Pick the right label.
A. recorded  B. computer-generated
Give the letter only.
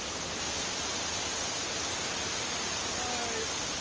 A